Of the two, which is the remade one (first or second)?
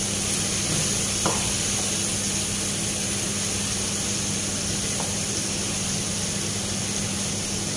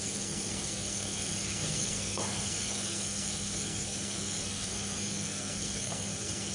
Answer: second